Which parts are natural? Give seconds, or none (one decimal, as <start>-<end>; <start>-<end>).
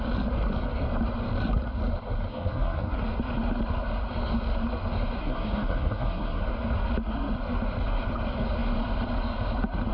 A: 0.0-2.3; 3.0-5.2; 6.4-9.9